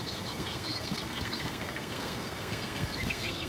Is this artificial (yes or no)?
yes